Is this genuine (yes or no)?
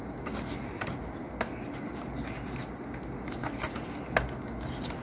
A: yes